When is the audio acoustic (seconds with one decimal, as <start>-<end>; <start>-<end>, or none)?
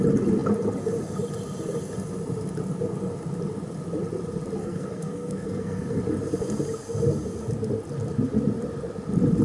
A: 0.0-4.6; 6.0-9.4